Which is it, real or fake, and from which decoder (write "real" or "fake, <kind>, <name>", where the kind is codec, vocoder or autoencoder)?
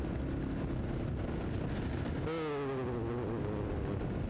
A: real